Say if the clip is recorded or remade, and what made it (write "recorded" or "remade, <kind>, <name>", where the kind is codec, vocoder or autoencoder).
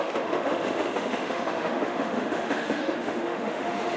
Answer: remade, autoencoder, DAC-VAE